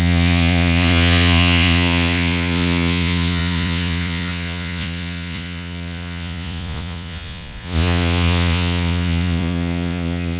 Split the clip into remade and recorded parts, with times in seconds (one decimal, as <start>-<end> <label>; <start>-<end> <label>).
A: 0.0-10.4 remade